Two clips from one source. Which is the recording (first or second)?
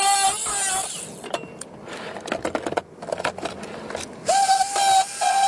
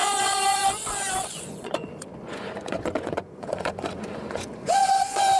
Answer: first